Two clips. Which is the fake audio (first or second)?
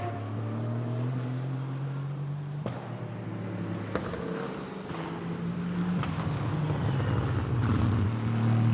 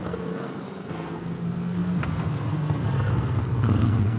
second